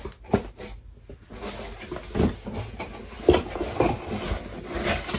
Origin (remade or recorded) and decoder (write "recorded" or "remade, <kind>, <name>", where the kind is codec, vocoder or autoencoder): recorded